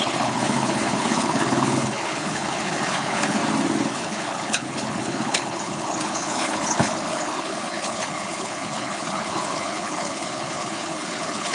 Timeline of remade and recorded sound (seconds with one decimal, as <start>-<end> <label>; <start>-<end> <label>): 0.0-3.4 remade; 3.4-3.9 recorded; 3.9-11.5 remade